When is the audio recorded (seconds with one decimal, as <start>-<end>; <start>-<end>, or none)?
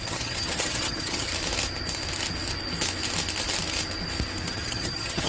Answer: 1.3-4.5